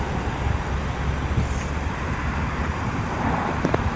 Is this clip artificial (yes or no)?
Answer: no